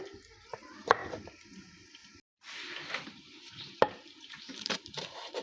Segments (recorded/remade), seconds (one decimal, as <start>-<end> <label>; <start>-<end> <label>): 0.0-1.0 remade; 1.0-1.6 recorded; 1.6-2.0 remade; 2.0-2.9 recorded; 2.9-5.4 remade